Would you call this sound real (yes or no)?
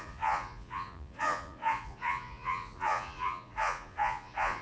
no